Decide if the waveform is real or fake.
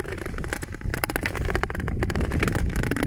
real